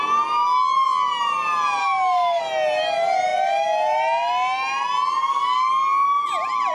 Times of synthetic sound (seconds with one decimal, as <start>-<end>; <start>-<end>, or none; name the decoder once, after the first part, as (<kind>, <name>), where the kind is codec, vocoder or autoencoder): 1.8-2.4 (codec, DAC); 5.2-5.7

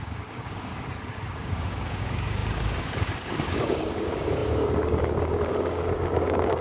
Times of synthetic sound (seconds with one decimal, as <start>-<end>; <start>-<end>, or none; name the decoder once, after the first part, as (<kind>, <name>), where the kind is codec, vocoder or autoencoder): 0.0-0.7 (codec, DAC); 1.3-6.6

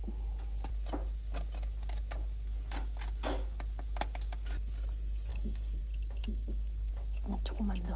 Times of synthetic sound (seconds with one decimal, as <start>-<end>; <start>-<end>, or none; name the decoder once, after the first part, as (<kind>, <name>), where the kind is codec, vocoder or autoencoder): 5.3-5.8 (codec, DAC); 6.2-6.9

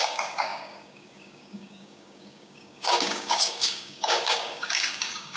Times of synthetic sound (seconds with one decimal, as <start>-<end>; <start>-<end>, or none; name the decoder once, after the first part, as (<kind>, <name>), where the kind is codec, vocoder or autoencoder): 0.0-5.4 (codec, DAC)

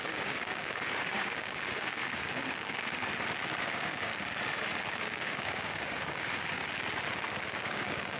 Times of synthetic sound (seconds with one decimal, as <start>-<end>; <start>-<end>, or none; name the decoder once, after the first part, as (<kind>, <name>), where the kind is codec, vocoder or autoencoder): 0.0-2.8 (codec, DAC); 3.6-4.1; 4.9-6.6; 7.6-8.2